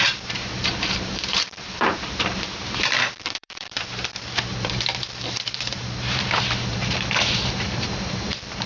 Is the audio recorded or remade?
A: remade